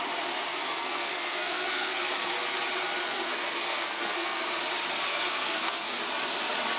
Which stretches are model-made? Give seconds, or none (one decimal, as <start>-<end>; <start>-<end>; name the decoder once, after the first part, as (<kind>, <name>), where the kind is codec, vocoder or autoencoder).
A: 0.5-2.1 (codec, SNAC); 3.0-4.4; 5.1-6.0